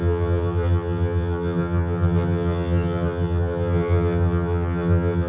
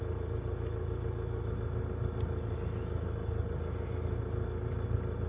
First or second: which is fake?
first